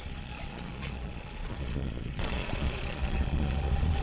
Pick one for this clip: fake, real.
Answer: fake